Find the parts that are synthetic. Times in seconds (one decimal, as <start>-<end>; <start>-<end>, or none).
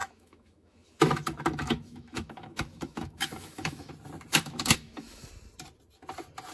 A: 0.0-3.9; 4.3-5.3